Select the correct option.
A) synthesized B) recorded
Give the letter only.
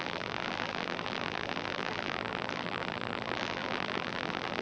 A